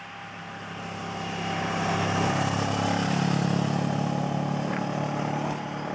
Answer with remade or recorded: recorded